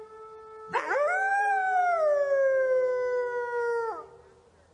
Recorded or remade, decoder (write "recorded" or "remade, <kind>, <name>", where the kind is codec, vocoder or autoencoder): recorded